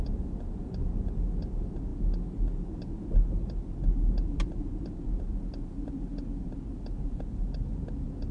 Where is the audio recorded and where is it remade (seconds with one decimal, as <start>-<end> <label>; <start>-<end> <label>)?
0.0-8.3 recorded